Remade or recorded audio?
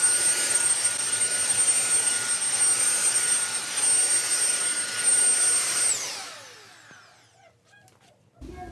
recorded